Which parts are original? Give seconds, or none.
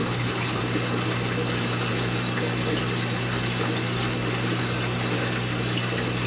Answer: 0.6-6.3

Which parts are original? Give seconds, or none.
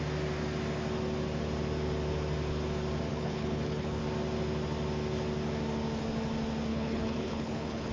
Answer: 0.0-3.1; 4.0-6.7